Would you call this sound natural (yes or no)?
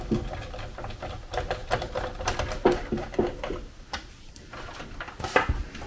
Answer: yes